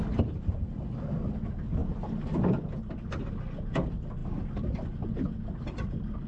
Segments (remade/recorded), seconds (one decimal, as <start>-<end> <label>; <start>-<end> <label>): 0.0-6.3 recorded

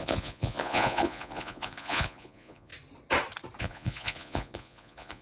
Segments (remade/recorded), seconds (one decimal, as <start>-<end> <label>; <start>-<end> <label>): 0.0-2.7 remade; 2.7-3.6 recorded; 3.6-5.2 remade

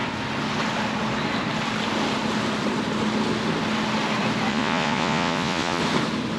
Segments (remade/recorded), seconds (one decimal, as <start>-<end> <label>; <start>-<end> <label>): 0.0-4.5 recorded; 4.5-5.8 remade; 5.8-6.4 recorded

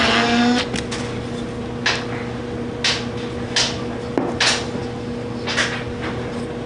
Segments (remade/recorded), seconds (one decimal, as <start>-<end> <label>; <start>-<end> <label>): 0.0-6.7 recorded

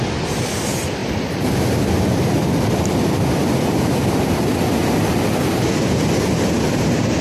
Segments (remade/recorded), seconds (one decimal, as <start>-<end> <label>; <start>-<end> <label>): 0.0-1.0 recorded; 1.0-5.3 remade; 5.3-7.2 recorded

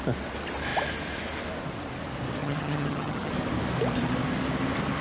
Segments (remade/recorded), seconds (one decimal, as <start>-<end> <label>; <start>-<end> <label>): 0.0-2.4 recorded; 2.4-3.3 remade; 3.3-5.0 recorded

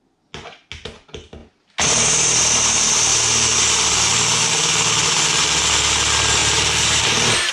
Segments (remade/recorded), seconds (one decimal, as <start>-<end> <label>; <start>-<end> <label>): 0.0-6.4 recorded; 6.4-7.5 remade